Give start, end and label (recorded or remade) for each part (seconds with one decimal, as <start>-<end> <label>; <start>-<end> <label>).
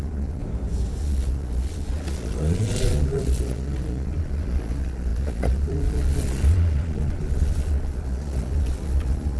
0.0-0.4 remade; 0.4-1.0 recorded; 1.0-9.4 remade